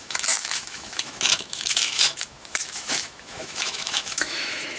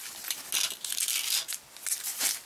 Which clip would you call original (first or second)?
second